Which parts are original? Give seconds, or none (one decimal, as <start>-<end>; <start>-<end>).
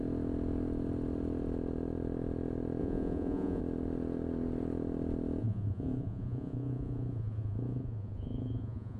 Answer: 0.0-2.8; 3.6-5.4